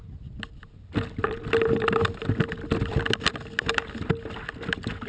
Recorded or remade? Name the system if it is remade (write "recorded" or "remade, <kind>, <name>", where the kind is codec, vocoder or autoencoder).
recorded